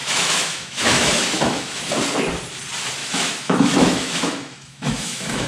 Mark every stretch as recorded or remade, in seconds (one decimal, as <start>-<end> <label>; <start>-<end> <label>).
0.0-1.9 remade; 1.9-3.0 recorded; 3.0-5.5 remade